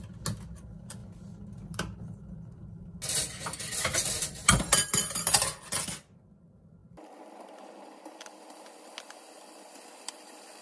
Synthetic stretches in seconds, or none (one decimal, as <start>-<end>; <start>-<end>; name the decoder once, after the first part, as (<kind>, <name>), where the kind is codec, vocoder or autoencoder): none